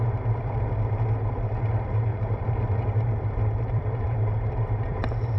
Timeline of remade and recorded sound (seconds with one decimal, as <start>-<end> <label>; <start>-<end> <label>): 0.0-2.1 recorded; 2.1-5.4 remade